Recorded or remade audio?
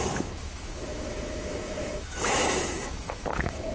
remade